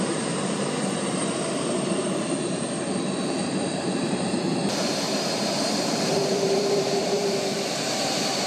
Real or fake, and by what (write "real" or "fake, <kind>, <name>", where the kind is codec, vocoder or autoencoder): fake, vocoder, BigVGAN v2